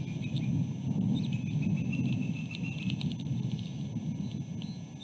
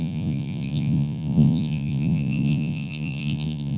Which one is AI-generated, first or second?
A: second